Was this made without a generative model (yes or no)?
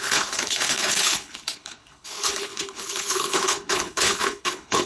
no